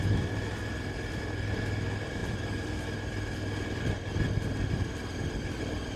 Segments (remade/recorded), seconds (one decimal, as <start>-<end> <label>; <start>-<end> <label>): 0.0-6.0 remade